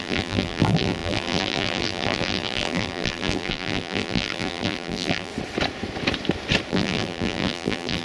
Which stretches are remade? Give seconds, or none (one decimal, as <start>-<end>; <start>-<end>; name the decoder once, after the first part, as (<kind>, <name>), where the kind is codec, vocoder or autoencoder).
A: 0.0-5.3 (vocoder, BigVGAN v2); 6.7-8.0